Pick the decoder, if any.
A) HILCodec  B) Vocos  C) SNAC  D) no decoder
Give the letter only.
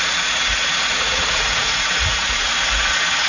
B